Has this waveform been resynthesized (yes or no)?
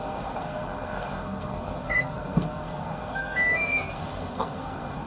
yes